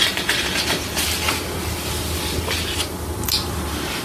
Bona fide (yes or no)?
yes